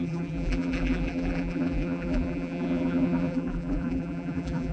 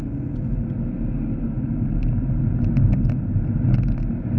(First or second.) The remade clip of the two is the first